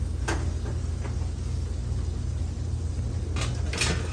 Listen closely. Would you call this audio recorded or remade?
recorded